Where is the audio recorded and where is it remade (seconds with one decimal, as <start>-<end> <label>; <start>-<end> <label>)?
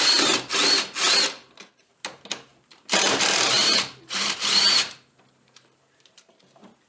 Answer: 0.0-2.5 recorded; 2.5-6.9 remade